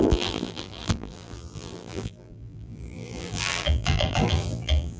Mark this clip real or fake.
fake